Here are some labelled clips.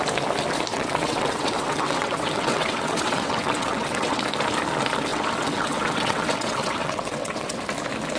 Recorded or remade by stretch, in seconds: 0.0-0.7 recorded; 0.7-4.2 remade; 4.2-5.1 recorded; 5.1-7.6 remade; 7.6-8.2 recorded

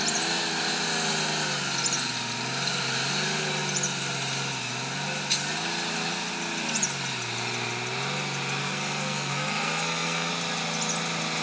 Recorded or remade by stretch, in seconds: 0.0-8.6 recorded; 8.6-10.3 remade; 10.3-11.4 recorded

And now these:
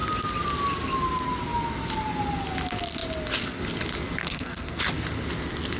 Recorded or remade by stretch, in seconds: 0.0-4.2 recorded; 4.2-4.8 remade; 4.8-5.8 recorded

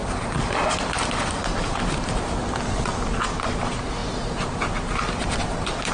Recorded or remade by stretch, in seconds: 0.0-5.9 recorded